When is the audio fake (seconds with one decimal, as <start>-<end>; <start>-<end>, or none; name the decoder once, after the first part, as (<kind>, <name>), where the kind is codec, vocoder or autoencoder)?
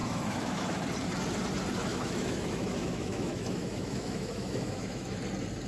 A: 0.0-0.8 (autoencoder, DAC-VAE); 1.9-5.2